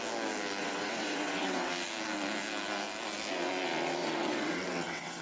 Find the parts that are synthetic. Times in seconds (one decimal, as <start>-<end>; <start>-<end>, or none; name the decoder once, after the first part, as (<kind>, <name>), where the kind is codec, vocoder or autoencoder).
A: 0.6-1.7 (vocoder, WaveNeXt); 4.0-5.2